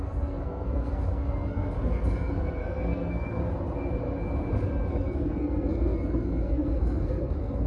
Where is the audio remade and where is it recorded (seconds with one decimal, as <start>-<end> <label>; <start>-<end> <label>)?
0.0-3.4 remade; 3.4-4.9 recorded; 4.9-7.7 remade

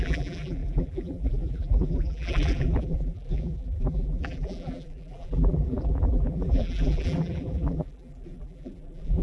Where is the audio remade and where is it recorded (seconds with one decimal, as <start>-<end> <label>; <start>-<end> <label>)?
0.0-9.2 remade

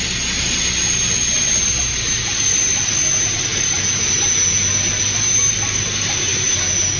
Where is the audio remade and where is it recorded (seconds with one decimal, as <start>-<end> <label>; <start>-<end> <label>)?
0.0-7.0 recorded

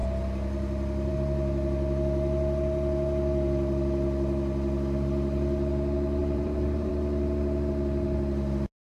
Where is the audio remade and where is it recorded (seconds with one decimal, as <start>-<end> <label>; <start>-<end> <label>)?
0.0-6.2 recorded; 6.2-6.9 remade; 6.9-9.0 recorded